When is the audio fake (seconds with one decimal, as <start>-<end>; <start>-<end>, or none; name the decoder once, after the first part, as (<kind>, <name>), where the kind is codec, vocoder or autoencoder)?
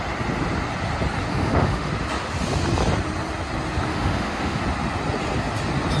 1.3-1.9 (autoencoder, DAC-VAE); 3.9-4.6